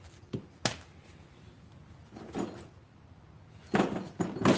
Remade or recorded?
recorded